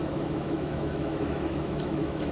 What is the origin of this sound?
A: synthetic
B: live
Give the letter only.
A